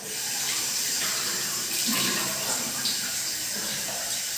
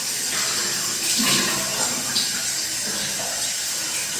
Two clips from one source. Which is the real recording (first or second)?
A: second